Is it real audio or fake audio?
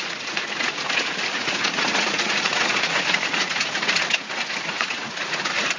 fake